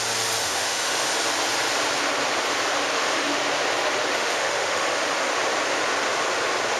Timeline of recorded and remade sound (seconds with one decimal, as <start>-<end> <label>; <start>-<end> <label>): 0.0-0.4 recorded; 0.4-1.1 remade; 1.1-2.9 recorded; 2.9-3.4 remade; 3.4-4.1 recorded; 4.1-5.3 remade; 5.3-6.8 recorded